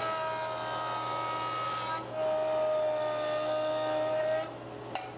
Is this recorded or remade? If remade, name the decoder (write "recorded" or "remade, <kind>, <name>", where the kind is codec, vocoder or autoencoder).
recorded